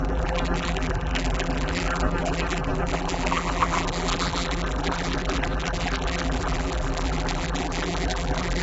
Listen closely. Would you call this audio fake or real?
fake